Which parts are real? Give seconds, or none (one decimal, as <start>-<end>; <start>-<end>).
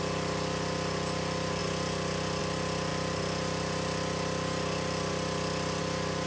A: 0.0-6.3